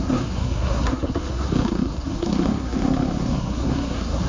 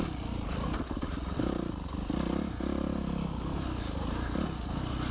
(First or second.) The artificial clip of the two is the first